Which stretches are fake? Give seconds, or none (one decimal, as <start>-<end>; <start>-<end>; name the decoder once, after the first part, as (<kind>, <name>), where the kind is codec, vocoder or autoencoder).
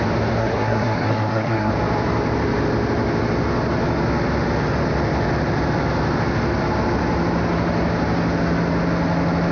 0.4-1.7 (codec, SNAC)